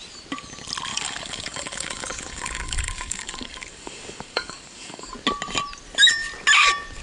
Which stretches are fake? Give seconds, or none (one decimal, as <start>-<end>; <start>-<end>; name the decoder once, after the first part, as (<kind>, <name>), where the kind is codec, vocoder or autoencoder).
0.9-5.1 (codec, DAC)